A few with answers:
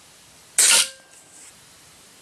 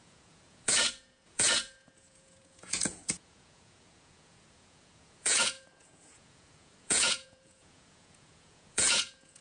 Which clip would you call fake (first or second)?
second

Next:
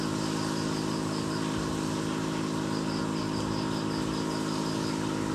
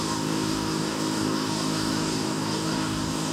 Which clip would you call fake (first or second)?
second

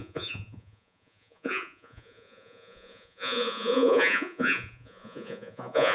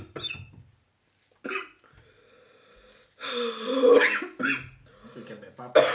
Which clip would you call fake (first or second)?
first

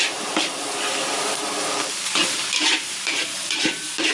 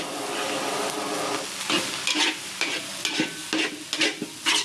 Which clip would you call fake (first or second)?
first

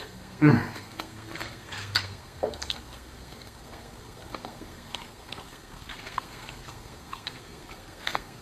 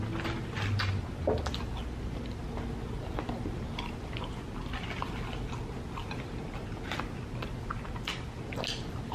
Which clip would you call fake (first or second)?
first